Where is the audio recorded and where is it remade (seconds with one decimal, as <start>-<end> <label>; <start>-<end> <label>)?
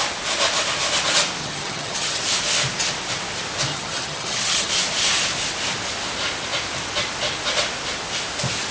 0.0-1.4 recorded; 1.4-2.2 remade; 2.2-3.7 recorded; 3.7-4.7 remade; 4.7-8.7 recorded